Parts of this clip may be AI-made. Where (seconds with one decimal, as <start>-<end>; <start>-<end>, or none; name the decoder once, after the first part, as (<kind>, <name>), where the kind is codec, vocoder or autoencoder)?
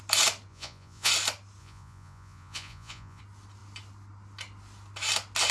0.5-1.1 (vocoder, Vocos); 1.6-3.2